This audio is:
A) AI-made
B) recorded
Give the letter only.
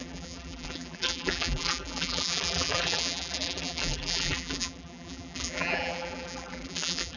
A